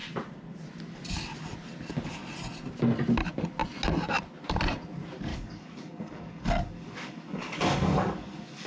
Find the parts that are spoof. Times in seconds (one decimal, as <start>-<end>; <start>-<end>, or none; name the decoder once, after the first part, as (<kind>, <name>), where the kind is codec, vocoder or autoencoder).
5.3-8.7 (codec, DAC)